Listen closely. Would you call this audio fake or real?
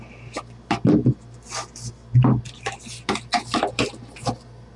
real